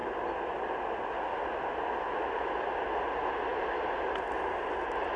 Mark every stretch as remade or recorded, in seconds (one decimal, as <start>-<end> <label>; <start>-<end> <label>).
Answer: 0.0-5.2 recorded

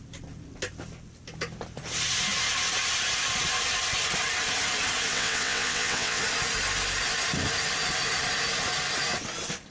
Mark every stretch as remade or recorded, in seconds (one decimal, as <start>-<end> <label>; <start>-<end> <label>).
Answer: 0.0-5.1 recorded; 5.1-6.2 remade; 6.2-9.7 recorded

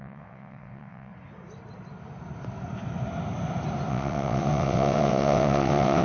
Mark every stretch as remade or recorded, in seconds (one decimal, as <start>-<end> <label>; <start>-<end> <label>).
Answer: 0.0-1.1 remade; 1.1-3.9 recorded; 3.9-6.0 remade